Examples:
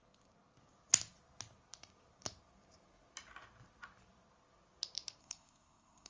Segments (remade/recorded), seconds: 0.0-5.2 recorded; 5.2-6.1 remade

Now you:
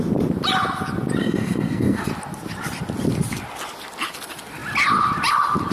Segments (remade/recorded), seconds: 0.0-1.2 recorded; 1.2-2.1 remade; 2.1-5.7 recorded

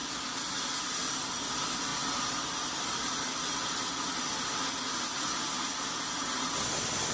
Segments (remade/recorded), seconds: 0.0-7.1 recorded